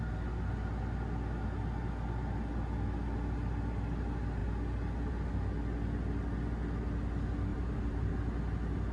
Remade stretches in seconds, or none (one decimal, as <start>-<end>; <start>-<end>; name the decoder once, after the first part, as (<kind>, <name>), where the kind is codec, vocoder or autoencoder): 7.5-8.1 (vocoder, BigVGAN v2)